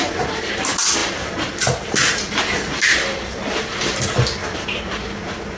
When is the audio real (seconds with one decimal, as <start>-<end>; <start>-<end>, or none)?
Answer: 0.0-5.6